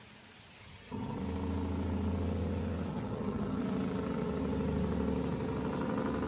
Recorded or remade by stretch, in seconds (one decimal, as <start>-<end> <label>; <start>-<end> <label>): 0.0-0.6 recorded; 0.6-1.2 remade; 1.2-2.9 recorded; 2.9-3.6 remade; 3.6-6.3 recorded